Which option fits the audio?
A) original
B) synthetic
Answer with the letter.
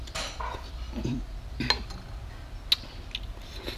A